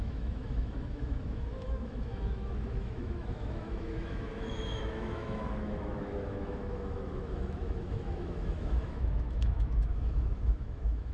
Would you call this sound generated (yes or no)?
yes